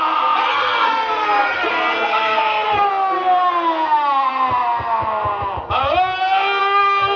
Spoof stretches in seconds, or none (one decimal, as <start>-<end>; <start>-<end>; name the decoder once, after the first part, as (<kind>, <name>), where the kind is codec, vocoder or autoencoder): 0.4-1.7 (codec, SNAC); 2.1-2.9